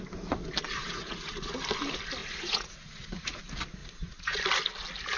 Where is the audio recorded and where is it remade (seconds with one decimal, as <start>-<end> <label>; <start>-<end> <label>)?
0.0-0.8 recorded; 0.8-1.5 remade; 1.5-2.2 recorded; 2.2-3.4 remade; 3.4-3.8 recorded; 3.8-4.4 remade; 4.4-5.2 recorded